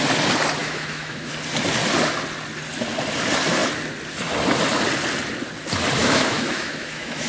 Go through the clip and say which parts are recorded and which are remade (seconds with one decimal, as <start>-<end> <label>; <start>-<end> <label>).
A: 0.0-0.6 recorded; 0.6-1.3 remade; 1.3-6.0 recorded; 6.0-7.3 remade